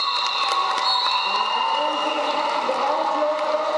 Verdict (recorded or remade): recorded